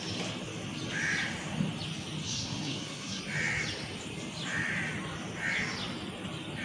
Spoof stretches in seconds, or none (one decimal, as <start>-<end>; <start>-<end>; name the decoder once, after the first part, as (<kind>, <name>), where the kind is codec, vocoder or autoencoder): 2.2-3.2 (codec, SNAC)